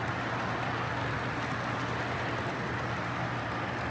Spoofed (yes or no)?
no